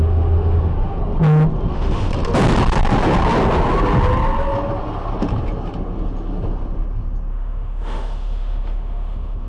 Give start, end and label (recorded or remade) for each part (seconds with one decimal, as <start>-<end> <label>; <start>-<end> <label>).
0.0-1.0 remade; 1.0-1.7 recorded; 1.7-2.1 remade; 2.1-7.3 recorded; 7.3-9.5 remade